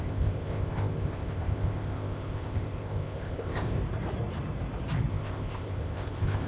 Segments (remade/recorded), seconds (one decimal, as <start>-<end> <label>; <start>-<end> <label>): 0.0-3.8 remade; 3.8-5.1 recorded; 5.1-6.5 remade